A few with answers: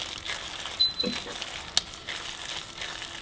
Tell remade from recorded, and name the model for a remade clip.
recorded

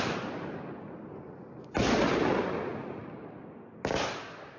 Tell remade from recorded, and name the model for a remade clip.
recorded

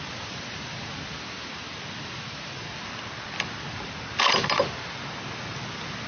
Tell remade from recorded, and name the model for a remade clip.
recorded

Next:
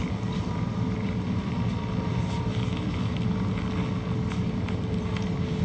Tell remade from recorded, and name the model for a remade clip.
recorded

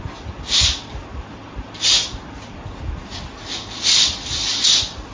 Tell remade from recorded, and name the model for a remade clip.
recorded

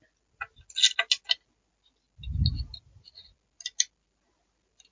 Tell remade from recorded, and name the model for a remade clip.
recorded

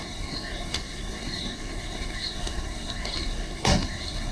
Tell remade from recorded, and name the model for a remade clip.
remade, codec, SNAC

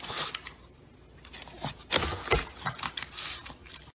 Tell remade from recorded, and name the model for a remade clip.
recorded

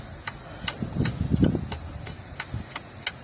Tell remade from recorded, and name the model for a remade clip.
recorded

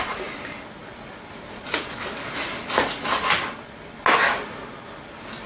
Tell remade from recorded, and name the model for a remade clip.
recorded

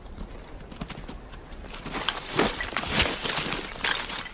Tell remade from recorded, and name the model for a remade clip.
recorded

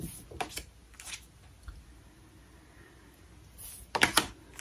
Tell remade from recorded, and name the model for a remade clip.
recorded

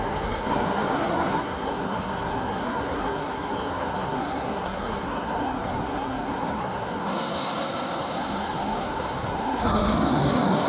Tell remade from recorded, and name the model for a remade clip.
remade, codec, SNAC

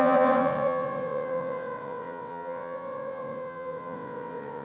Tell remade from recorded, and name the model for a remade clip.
remade, vocoder, WaveNeXt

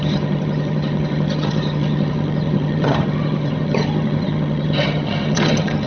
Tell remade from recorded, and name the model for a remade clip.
remade, vocoder, HiFi-GAN